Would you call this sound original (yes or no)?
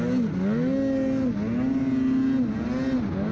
yes